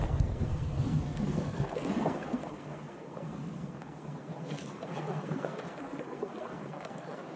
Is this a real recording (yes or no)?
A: no